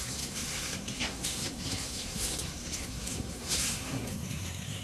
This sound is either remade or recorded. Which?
remade